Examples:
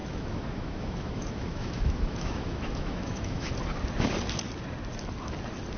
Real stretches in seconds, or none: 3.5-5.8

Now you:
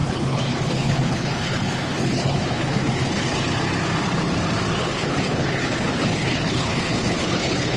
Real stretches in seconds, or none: 3.2-4.8

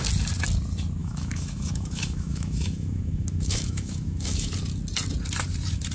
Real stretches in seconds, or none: 0.0-1.0; 4.5-5.9

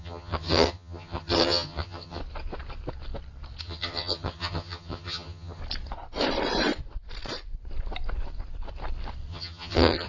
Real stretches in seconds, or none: 2.2-3.6; 5.6-9.3